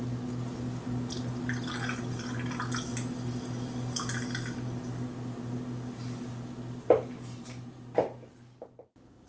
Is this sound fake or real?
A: real